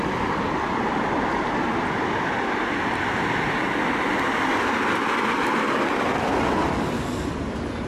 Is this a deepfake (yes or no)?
no